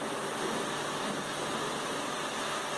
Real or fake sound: real